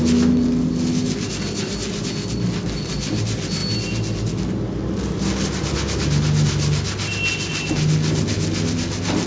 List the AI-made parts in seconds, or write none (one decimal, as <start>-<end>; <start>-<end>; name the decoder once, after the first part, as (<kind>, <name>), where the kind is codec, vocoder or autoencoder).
none